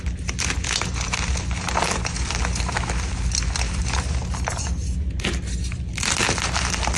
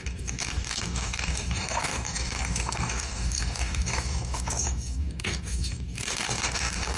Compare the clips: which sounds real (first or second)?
first